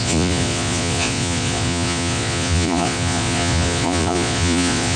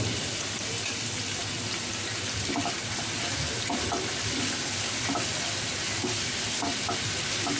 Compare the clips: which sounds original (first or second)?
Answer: second